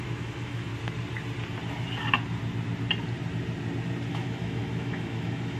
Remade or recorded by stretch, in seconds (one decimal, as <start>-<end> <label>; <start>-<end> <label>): 0.0-0.7 remade; 0.7-4.1 recorded; 4.1-5.6 remade